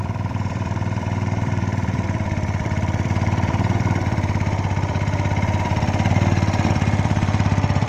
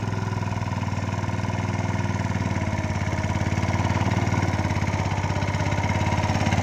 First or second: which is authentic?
second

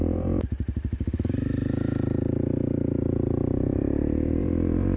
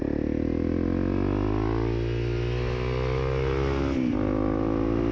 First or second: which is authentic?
second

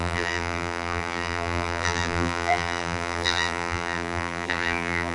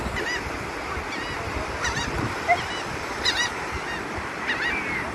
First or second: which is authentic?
second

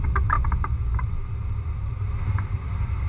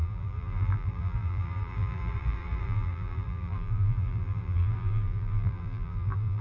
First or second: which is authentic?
first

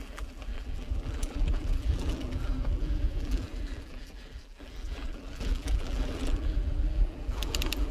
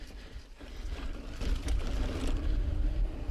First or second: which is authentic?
second